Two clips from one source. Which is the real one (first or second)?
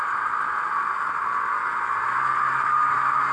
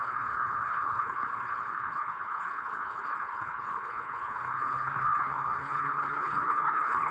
first